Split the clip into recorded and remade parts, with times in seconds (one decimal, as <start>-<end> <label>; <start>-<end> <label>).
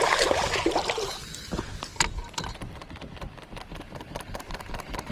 0.0-0.8 remade; 0.8-3.6 recorded; 3.6-5.1 remade